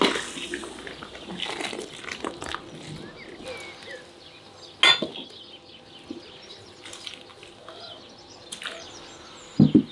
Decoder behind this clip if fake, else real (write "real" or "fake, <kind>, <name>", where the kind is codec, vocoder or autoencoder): real